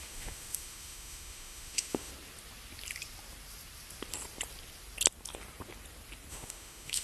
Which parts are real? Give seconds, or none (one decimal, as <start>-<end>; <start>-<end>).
2.1-6.3